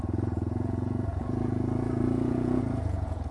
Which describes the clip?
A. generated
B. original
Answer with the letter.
A